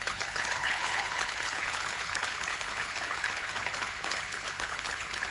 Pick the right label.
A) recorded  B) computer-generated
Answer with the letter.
B